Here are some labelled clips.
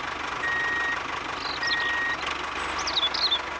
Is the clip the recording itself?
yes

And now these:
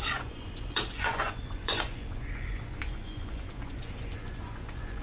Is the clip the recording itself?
no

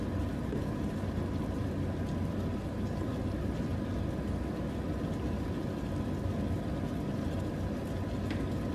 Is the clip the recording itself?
yes